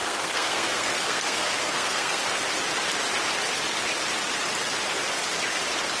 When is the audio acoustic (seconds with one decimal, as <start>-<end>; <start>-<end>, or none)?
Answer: 2.2-6.0